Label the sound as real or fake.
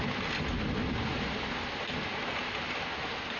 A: real